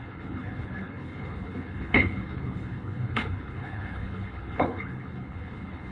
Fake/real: fake